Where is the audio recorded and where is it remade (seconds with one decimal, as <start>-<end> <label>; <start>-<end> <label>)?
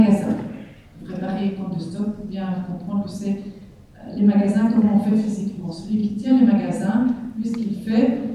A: 0.0-3.6 recorded; 3.6-5.6 remade; 5.6-6.0 recorded; 6.0-6.9 remade; 6.9-8.3 recorded